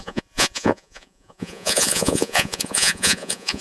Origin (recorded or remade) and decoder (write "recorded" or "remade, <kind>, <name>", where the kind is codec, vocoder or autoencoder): remade, vocoder, Vocos